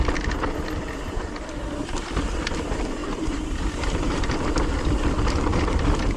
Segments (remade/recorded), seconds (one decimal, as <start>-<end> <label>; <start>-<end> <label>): 0.0-3.0 recorded; 3.0-4.2 remade; 4.2-5.5 recorded; 5.5-6.2 remade